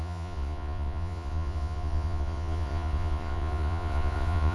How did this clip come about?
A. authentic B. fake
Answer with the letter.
B